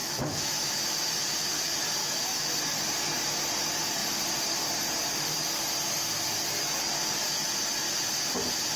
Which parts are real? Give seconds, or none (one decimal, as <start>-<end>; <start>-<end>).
1.1-2.0; 2.6-8.8